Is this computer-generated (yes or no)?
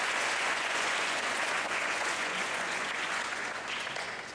yes